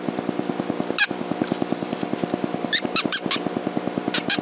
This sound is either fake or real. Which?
fake